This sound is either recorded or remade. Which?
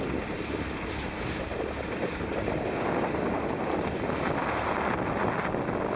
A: recorded